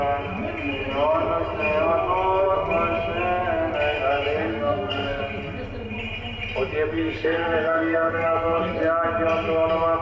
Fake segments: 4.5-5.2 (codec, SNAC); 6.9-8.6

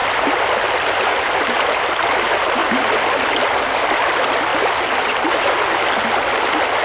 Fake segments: none

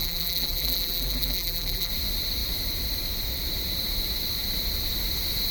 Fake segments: 0.0-1.9 (vocoder, BigVGAN v2)

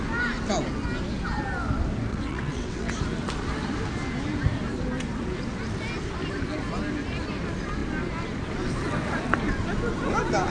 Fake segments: 2.1-2.9 (vocoder, WaveNeXt)

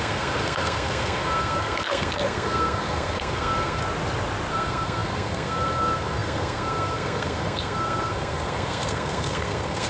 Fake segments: 0.0-3.8 (codec, SNAC); 4.5-9.9

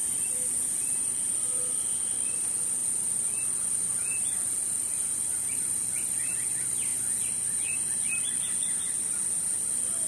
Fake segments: 0.0-1.9 (vocoder, BigVGAN v2); 2.8-5.6

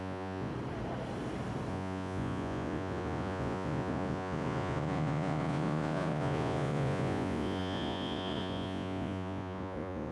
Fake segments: 0.0-0.5 (vocoder, Vocos); 1.7-10.1